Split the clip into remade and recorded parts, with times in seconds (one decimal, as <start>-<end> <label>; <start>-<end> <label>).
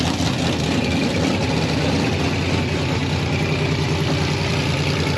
0.0-5.2 recorded